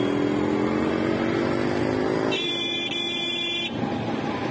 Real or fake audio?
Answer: real